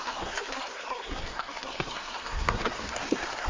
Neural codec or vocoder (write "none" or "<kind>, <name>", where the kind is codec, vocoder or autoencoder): codec, SNAC